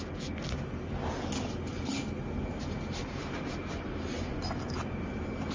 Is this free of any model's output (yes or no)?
yes